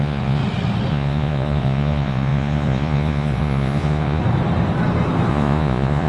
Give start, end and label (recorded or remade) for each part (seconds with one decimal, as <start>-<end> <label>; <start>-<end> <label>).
0.0-0.4 remade; 0.4-0.9 recorded; 0.9-4.2 remade; 4.2-5.3 recorded; 5.3-6.1 remade